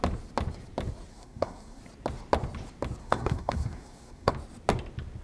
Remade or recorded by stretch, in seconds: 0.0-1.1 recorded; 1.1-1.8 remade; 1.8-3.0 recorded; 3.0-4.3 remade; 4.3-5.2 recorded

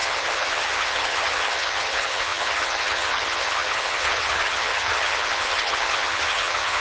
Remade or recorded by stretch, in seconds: 0.0-6.8 remade